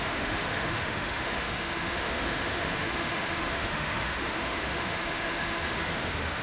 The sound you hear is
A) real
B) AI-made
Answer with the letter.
B